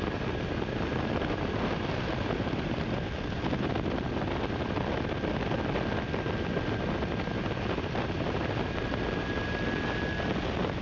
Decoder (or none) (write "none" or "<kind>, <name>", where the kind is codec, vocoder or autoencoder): none